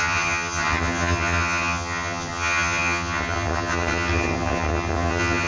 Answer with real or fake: fake